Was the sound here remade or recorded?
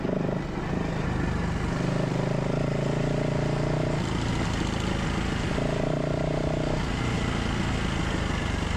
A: recorded